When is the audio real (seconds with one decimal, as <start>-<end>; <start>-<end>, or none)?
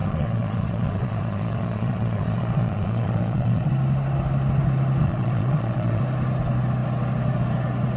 3.7-5.0; 6.0-8.0